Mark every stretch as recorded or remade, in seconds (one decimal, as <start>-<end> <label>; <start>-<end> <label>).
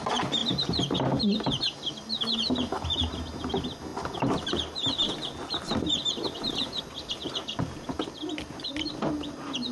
0.0-9.7 recorded